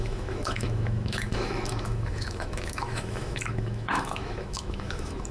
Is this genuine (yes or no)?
no